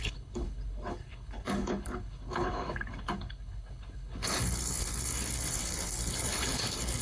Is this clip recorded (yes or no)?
no